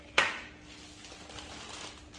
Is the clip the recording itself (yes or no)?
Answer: yes